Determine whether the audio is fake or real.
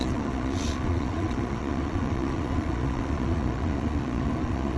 fake